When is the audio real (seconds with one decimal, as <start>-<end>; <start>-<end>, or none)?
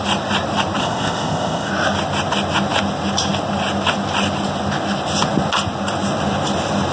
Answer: 0.0-0.8; 1.7-6.9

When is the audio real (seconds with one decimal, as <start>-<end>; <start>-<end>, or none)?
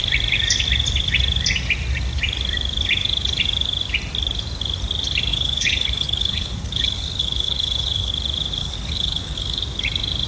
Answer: 0.0-5.3; 8.1-8.6; 9.6-10.3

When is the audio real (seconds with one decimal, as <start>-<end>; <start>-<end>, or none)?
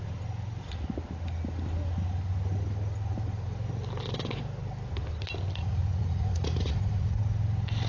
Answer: 0.0-5.6; 7.2-7.9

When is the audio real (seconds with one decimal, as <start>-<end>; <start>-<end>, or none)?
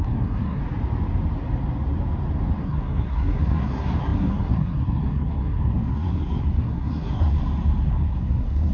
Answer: 0.6-2.6; 7.4-7.9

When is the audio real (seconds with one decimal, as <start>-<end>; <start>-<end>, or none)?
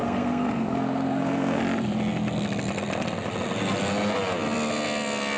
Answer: 1.6-5.4